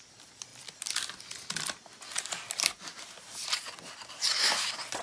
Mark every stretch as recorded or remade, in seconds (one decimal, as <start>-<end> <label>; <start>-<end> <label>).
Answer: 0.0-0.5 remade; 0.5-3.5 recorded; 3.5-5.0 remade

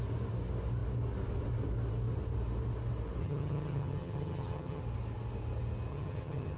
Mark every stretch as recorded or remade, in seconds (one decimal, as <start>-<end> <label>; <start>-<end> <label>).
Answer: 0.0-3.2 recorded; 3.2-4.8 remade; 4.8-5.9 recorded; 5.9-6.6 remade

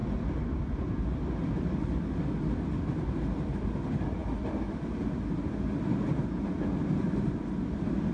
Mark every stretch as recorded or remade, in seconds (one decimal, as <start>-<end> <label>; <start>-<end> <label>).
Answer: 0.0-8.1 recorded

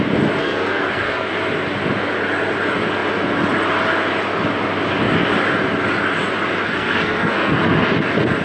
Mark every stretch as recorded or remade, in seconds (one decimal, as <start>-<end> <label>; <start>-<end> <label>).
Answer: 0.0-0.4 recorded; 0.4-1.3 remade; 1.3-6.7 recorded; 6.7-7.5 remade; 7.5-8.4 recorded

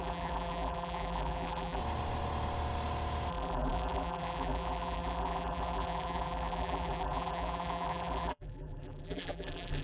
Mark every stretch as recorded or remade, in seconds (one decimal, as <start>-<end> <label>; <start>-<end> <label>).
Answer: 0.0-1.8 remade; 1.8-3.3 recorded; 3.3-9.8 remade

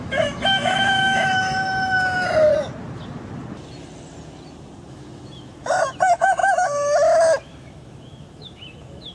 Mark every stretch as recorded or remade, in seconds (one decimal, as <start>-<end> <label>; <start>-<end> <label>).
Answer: 0.0-2.5 remade; 2.5-4.9 recorded; 4.9-9.1 remade